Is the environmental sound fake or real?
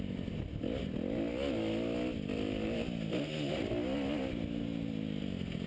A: real